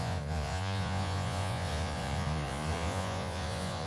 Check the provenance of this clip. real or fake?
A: fake